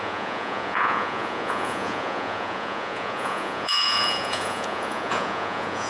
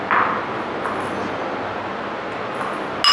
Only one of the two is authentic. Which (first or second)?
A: second